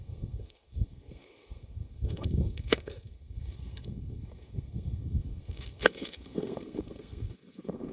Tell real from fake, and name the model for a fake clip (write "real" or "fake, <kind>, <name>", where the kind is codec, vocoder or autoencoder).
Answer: fake, codec, SNAC